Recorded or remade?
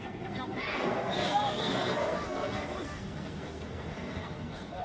remade